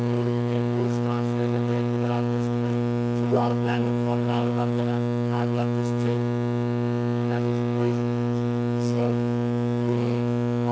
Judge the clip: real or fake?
fake